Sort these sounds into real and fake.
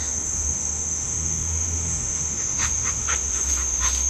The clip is fake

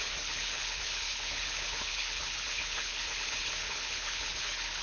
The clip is fake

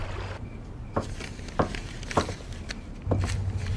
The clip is fake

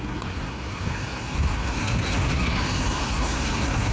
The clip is fake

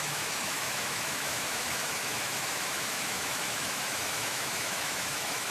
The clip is fake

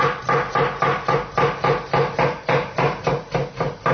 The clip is real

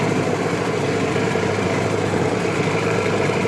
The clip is fake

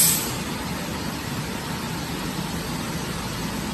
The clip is real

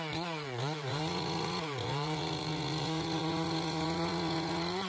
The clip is fake